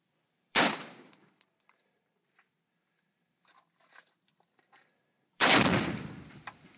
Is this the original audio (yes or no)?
no